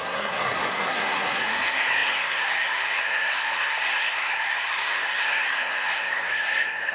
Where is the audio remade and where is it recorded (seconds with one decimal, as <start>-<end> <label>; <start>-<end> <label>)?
0.0-6.9 remade